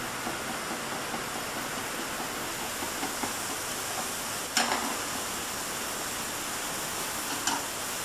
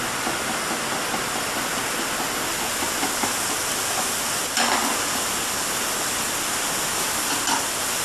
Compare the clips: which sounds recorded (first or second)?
first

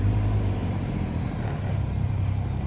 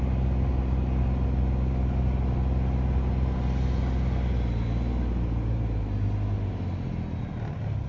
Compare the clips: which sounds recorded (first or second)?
second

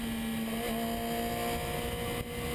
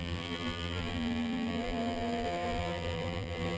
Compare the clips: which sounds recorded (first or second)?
first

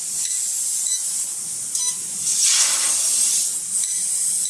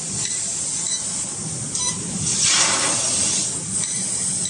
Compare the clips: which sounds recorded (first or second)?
first